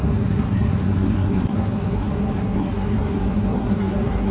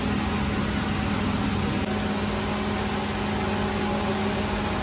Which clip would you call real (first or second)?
second